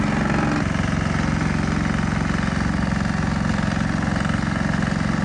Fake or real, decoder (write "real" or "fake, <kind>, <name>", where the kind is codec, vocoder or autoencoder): real